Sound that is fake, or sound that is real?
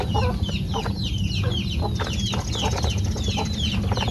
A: real